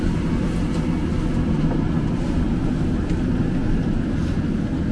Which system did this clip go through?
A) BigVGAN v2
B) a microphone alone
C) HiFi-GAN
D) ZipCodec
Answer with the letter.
B